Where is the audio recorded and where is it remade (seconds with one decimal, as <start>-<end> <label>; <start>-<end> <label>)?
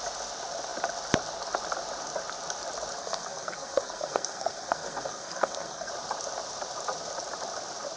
0.0-3.0 recorded; 3.0-5.9 remade; 5.9-8.0 recorded